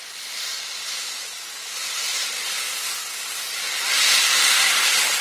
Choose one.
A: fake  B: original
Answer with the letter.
B